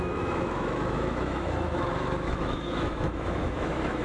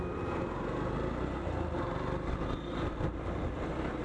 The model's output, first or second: first